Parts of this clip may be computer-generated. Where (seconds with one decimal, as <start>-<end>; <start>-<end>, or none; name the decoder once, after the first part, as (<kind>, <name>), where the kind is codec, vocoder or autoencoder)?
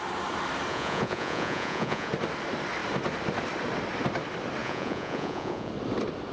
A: 0.7-2.1 (vocoder, Vocos); 4.6-5.7